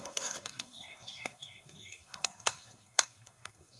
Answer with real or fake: fake